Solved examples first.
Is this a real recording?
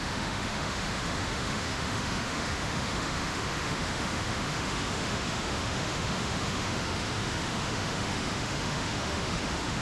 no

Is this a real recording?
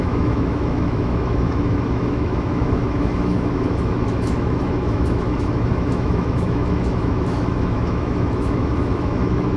no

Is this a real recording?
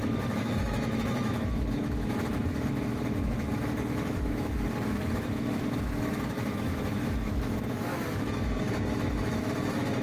no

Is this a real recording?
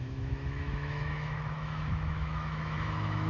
no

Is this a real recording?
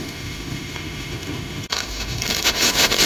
no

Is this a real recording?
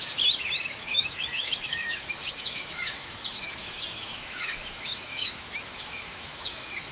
no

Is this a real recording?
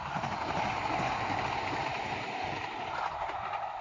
yes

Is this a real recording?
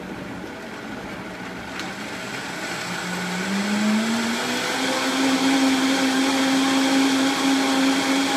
yes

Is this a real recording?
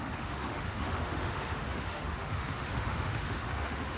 no